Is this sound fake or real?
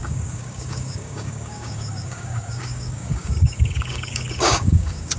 fake